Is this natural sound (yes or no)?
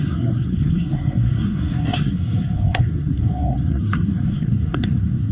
no